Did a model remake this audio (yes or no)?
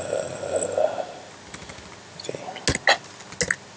no